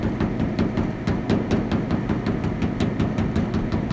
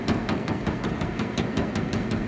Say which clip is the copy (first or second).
second